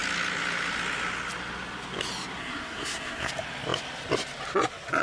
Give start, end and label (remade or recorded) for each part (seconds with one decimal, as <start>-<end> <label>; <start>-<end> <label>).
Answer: 0.0-2.4 recorded; 2.4-3.3 remade; 3.3-5.0 recorded